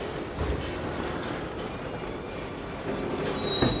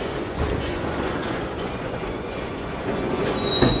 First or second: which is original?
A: first